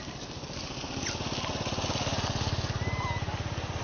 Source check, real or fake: real